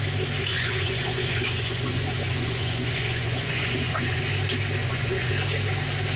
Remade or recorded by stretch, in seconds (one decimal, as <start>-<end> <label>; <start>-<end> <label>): 0.0-0.5 recorded; 0.5-4.2 remade; 4.2-4.8 recorded; 4.8-5.3 remade; 5.3-6.2 recorded